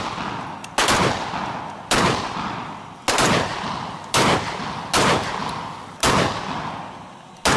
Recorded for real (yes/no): yes